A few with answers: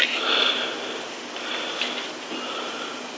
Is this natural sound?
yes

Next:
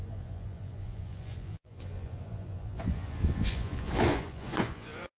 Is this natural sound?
no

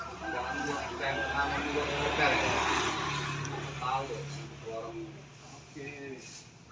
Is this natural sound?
yes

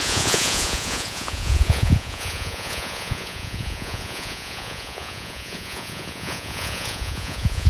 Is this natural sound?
no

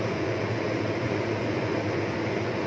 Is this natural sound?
no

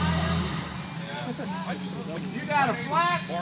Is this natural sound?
yes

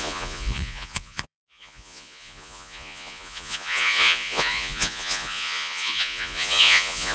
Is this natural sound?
no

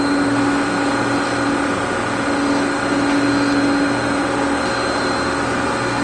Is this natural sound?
yes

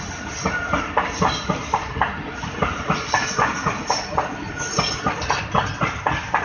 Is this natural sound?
yes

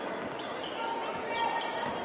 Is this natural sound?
yes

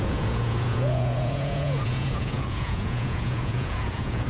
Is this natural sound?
no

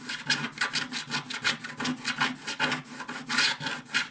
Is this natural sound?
yes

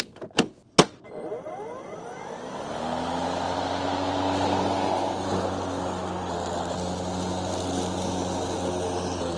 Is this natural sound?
yes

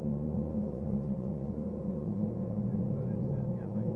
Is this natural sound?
no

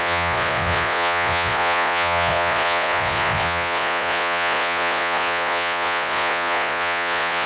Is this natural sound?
no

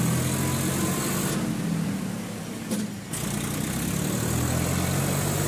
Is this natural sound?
yes